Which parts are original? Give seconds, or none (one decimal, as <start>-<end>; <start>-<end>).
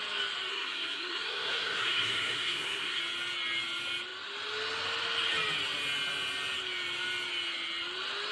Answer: 0.0-0.5; 3.0-8.3